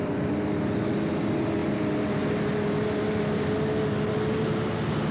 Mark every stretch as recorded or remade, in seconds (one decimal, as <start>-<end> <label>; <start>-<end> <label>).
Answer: 0.0-5.1 recorded